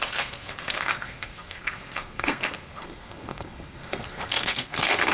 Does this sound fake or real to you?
fake